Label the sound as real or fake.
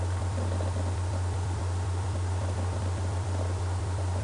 fake